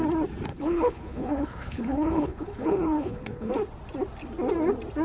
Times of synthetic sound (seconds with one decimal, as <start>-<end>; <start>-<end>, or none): 0.5-3.5